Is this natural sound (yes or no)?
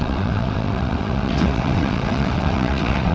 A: no